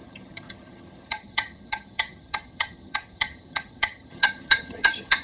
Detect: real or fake fake